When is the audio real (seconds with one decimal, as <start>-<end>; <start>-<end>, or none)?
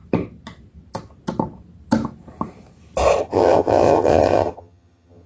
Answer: 0.0-3.2